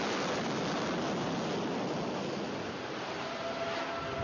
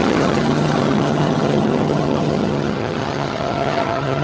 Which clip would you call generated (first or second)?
second